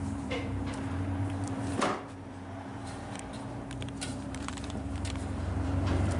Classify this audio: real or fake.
fake